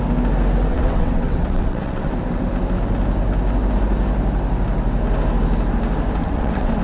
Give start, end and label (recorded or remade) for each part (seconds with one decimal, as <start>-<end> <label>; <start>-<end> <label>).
0.0-0.7 recorded; 0.7-2.1 remade; 2.1-6.2 recorded; 6.2-6.8 remade